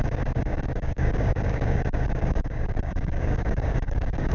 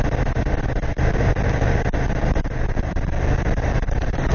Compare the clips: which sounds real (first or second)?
second